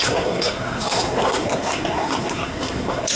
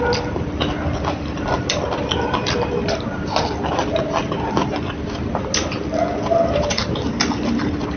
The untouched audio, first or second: second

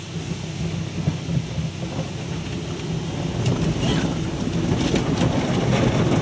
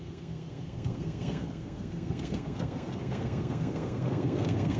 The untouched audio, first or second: first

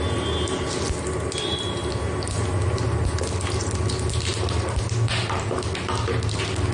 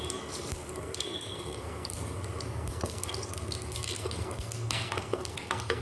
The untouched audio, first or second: first